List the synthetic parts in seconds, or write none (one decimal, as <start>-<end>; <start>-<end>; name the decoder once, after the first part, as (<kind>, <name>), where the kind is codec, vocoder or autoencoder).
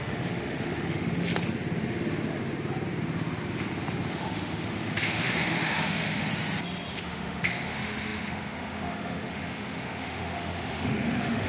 0.0-1.3 (autoencoder, DAC-VAE); 4.1-6.3; 6.9-11.5